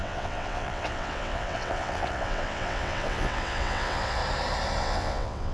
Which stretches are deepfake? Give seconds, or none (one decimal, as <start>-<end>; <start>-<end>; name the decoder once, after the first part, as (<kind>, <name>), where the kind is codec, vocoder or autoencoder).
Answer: 0.0-4.2 (vocoder, WaveNeXt); 4.8-5.5

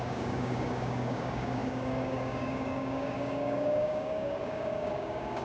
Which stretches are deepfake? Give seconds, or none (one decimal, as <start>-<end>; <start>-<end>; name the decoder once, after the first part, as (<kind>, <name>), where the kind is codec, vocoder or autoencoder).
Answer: 0.0-5.4 (codec, DAC)

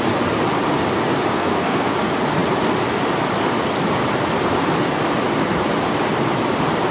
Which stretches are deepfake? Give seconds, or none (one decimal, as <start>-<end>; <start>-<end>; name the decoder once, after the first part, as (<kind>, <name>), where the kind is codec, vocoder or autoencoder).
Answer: 1.3-1.9 (codec, SNAC)

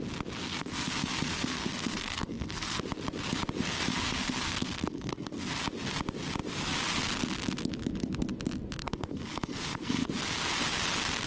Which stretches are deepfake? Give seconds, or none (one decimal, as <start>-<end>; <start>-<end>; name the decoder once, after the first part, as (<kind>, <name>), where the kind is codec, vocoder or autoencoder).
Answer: 0.4-2.8 (codec, SNAC); 3.9-5.5; 8.8-10.1